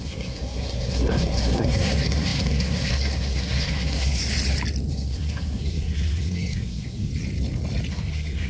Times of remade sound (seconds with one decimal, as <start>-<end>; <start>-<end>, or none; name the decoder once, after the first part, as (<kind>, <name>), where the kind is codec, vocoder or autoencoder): 0.0-4.2 (codec, SNAC); 4.9-7.1; 7.9-8.5